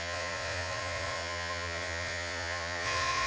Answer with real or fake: fake